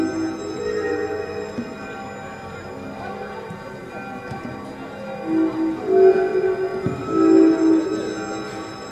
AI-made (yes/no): no